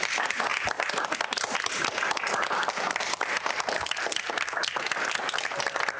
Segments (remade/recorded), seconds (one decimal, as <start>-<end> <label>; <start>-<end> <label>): 0.0-6.0 recorded